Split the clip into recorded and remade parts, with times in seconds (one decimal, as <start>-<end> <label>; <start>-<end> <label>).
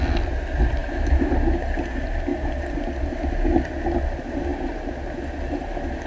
0.0-0.8 recorded; 0.8-1.3 remade; 1.3-6.1 recorded